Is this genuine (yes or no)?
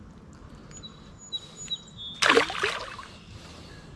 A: yes